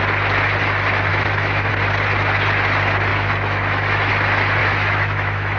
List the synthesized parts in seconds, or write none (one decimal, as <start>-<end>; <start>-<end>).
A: 1.1-1.7; 3.1-4.1; 4.6-5.6